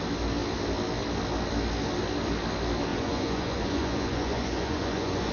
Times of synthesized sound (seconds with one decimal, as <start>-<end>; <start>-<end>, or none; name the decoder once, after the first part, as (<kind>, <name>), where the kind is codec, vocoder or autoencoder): 2.9-5.3 (vocoder, Vocos)